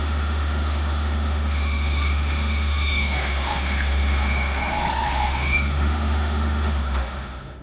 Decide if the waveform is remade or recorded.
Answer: remade